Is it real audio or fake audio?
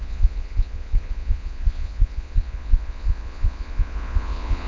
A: fake